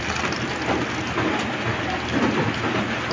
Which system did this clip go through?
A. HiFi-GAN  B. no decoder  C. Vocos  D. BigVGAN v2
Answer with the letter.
B